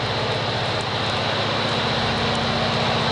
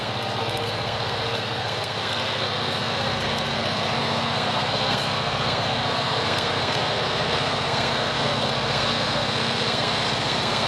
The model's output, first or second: second